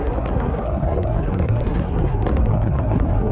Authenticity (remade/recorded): remade